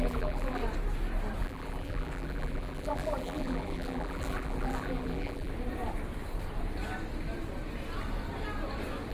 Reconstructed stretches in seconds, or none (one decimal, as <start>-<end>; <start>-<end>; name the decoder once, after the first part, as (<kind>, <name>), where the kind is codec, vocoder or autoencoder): 0.0-0.6 (vocoder, BigVGAN v2); 1.4-5.5